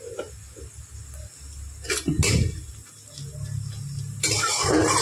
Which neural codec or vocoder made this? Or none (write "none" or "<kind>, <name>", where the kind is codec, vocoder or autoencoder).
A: none